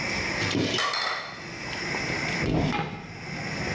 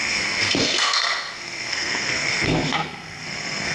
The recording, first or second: first